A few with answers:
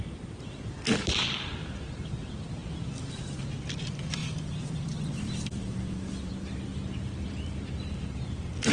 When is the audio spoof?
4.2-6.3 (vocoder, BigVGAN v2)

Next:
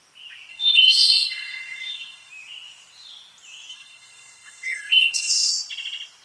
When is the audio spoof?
0.5-2.3 (codec, SNAC); 3.7-5.5

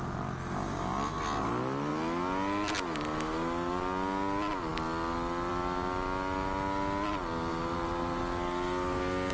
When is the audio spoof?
7.5-8.2 (vocoder, BigVGAN v2)

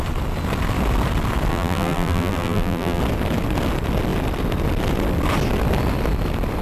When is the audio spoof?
1.5-3.0 (vocoder, BigVGAN v2)

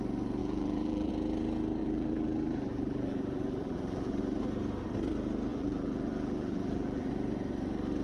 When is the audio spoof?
0.4-1.1 (vocoder, BigVGAN v2); 1.8-4.2; 5.5-7.1

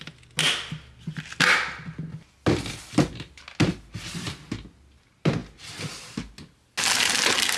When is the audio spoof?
none

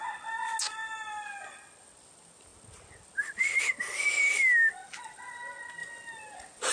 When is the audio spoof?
none